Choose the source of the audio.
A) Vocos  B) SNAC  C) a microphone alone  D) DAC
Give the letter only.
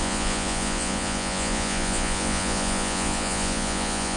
A